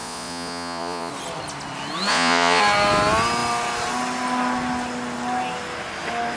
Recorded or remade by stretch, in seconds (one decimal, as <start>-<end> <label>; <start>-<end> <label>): 0.0-1.1 remade; 1.1-2.1 recorded; 2.1-2.6 remade; 2.6-6.4 recorded

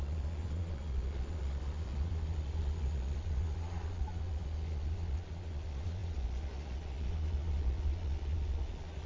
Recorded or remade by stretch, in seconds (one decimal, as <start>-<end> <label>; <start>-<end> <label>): 0.0-9.1 remade

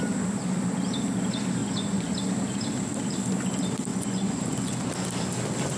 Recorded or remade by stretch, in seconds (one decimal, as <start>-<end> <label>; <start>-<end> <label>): 0.0-1.6 recorded; 1.6-2.1 remade; 2.1-3.9 recorded; 3.9-4.8 remade; 4.8-5.8 recorded

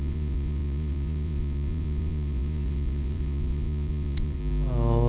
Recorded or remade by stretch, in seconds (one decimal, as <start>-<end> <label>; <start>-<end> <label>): 0.0-4.4 remade; 4.4-5.1 recorded